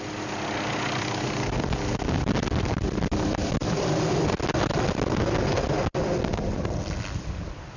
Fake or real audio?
real